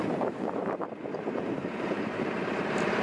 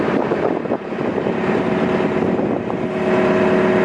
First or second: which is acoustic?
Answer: second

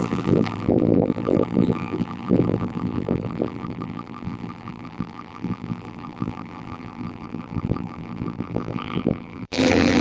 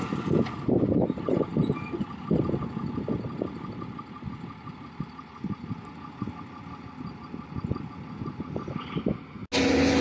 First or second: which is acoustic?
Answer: second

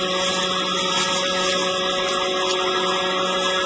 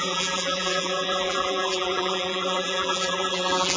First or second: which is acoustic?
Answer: first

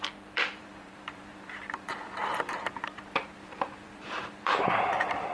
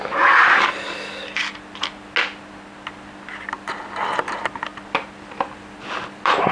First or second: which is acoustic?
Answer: second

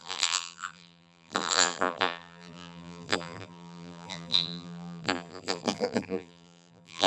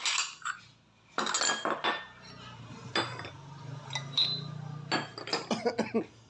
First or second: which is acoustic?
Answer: second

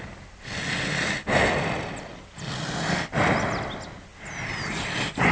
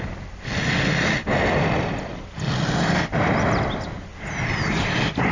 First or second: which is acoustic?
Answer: first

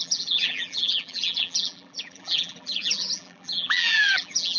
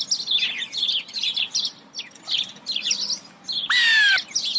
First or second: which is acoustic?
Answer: second